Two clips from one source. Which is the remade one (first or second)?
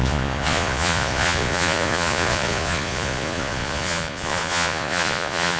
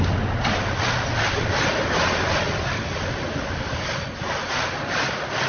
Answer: first